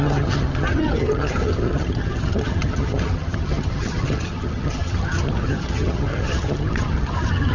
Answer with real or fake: fake